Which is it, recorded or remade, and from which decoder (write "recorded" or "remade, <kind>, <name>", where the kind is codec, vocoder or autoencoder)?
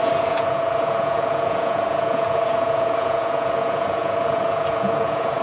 remade, vocoder, Vocos